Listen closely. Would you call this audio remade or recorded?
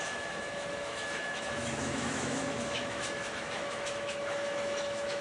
remade